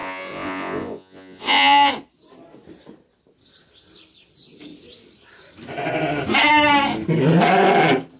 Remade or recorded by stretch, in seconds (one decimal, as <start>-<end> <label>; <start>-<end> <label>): 0.0-1.9 remade; 1.9-8.2 recorded